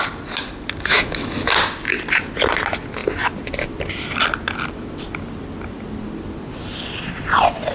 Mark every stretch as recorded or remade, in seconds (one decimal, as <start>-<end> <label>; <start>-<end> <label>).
0.0-0.9 recorded; 0.9-1.5 remade; 1.5-7.7 recorded